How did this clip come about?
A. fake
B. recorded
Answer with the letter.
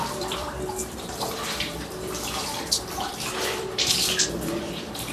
A